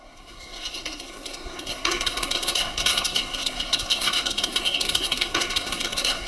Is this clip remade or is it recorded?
remade